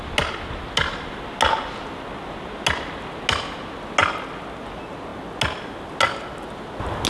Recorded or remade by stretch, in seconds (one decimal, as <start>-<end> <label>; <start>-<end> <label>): 0.0-7.1 recorded